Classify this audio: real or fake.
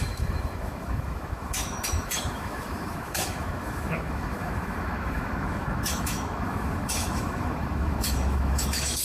fake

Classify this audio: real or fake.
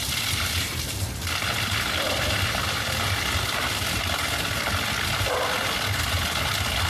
real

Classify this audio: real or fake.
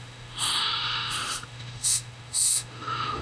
fake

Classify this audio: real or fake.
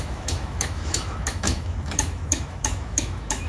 fake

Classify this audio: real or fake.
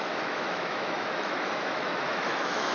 fake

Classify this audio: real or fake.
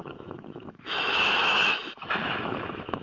fake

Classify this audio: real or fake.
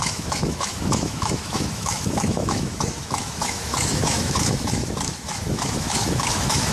fake